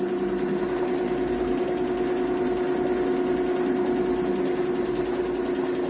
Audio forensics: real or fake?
real